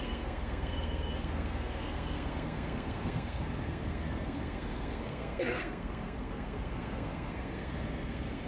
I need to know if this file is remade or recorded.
remade